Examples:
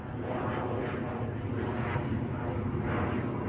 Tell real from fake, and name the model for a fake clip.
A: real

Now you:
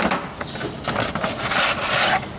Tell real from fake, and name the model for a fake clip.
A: real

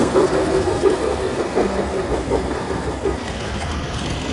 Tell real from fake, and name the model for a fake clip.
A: fake, codec, SNAC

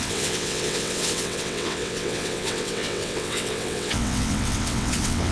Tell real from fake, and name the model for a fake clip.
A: fake, vocoder, WaveNeXt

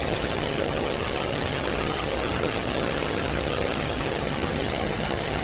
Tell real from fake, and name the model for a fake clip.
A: fake, vocoder, HiFi-GAN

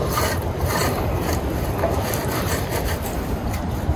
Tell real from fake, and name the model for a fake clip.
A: fake, vocoder, BigVGAN v2